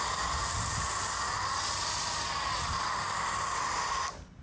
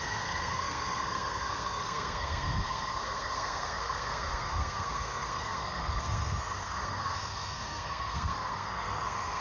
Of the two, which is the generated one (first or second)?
second